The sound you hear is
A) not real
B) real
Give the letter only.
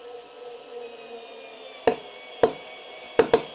B